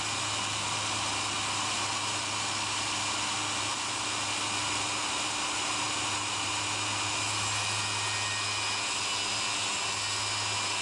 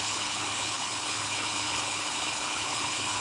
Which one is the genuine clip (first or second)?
first